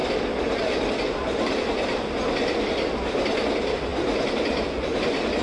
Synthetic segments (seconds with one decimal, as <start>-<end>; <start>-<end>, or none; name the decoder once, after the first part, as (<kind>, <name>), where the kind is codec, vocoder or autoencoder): none